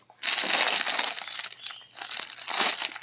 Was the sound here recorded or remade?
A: recorded